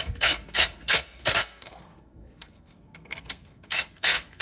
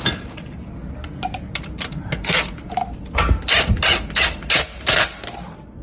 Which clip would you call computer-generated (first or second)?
first